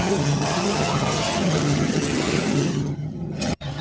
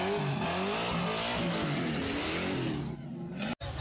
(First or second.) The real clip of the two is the second